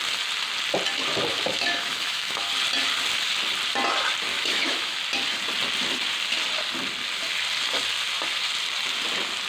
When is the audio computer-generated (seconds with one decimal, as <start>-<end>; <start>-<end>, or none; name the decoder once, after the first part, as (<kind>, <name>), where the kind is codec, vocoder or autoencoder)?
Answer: 1.3-2.5 (autoencoder, DAC-VAE); 4.3-5.0